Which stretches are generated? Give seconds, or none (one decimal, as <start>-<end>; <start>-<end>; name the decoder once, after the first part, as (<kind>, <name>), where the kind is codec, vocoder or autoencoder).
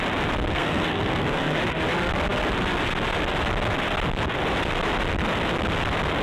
0.5-1.6 (codec, SNAC)